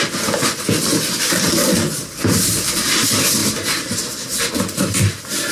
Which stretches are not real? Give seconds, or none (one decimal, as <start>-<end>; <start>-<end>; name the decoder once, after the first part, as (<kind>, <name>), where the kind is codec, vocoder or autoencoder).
none